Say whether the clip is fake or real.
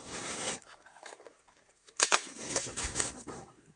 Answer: fake